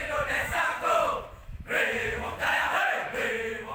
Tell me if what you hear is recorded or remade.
remade